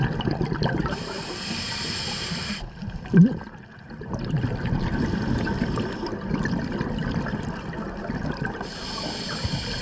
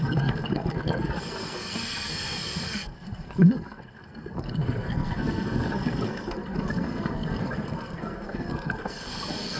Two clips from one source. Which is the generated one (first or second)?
second